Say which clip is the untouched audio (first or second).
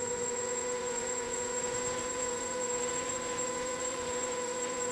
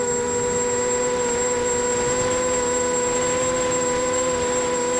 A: second